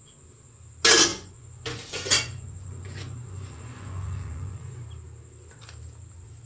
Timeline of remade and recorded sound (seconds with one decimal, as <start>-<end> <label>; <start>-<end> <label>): 0.0-1.1 recorded; 1.1-4.8 remade; 4.8-6.5 recorded